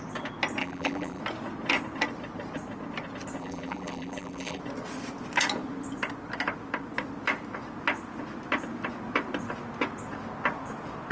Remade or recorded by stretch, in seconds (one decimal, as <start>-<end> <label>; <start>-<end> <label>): 0.0-0.6 recorded; 0.6-1.2 remade; 1.2-3.4 recorded; 3.4-4.6 remade; 4.6-11.1 recorded